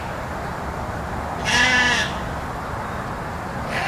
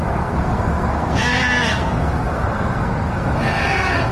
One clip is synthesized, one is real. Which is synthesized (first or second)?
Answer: second